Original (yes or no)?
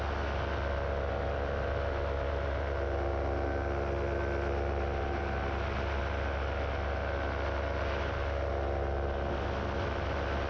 yes